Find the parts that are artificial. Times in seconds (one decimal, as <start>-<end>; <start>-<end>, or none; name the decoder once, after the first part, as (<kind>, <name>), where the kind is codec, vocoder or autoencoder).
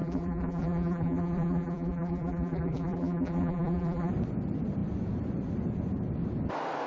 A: 0.0-4.1 (vocoder, BigVGAN v2)